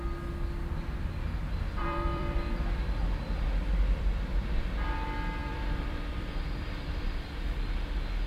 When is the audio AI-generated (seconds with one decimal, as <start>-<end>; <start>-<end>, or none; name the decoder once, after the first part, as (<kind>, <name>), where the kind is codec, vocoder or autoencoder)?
1.8-2.4 (vocoder, BigVGAN v2); 3.7-4.6; 5.4-7.5